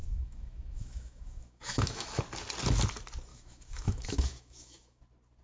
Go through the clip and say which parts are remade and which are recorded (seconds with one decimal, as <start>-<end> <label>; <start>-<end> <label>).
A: 0.0-2.2 remade; 2.2-3.3 recorded; 3.3-5.0 remade; 5.0-5.4 recorded